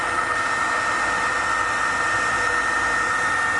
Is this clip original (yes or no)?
yes